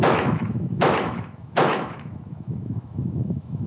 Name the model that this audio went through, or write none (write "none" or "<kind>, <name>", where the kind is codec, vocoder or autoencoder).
autoencoder, DAC-VAE